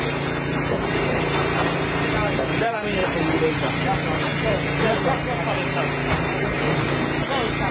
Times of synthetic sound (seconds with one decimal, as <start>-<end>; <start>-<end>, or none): 3.0-3.7